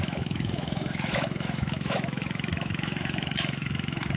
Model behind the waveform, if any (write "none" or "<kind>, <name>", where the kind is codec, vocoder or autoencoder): autoencoder, DAC-VAE